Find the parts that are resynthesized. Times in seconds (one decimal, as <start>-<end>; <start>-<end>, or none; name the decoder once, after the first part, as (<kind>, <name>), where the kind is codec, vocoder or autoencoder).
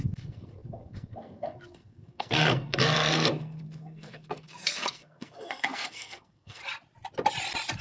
0.0-6.6 (codec, SNAC)